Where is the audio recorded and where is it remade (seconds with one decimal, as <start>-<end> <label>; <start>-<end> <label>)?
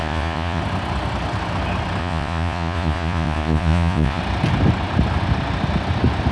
0.0-0.6 remade; 0.6-2.0 recorded; 2.0-4.2 remade; 4.2-6.3 recorded